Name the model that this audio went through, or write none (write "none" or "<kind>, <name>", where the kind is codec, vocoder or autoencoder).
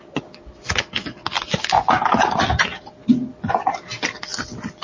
none